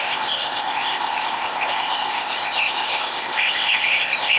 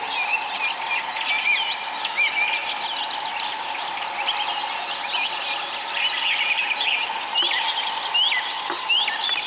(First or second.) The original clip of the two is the second